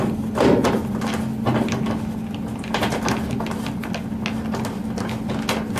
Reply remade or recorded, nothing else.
recorded